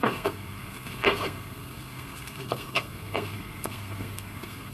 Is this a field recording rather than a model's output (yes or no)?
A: no